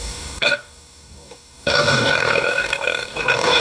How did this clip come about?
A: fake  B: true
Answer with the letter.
A